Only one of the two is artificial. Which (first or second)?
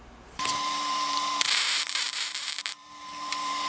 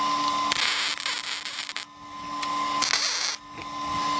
first